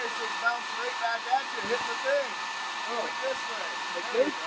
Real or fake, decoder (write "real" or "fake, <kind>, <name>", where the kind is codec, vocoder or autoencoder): real